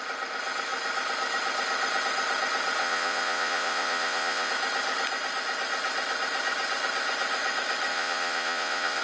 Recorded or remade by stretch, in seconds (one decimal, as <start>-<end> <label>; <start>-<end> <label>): 0.0-2.8 recorded; 2.8-4.5 remade; 4.5-7.9 recorded; 7.9-9.0 remade